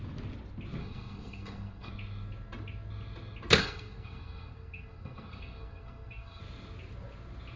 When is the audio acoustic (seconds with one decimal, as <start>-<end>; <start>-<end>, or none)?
0.0-0.8; 1.9-3.6; 6.4-7.6